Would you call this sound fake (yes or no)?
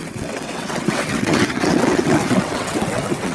yes